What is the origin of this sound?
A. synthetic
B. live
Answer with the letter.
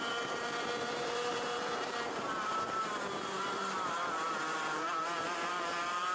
A